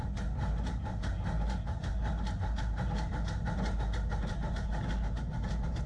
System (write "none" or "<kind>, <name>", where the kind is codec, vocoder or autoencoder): none